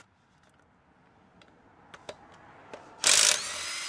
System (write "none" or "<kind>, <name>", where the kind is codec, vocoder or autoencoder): none